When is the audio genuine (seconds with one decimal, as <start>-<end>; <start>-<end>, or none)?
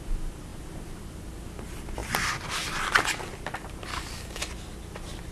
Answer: 0.0-3.9; 4.4-5.3